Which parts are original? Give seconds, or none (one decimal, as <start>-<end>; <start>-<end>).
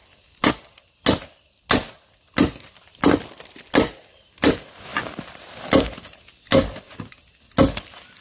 0.0-8.2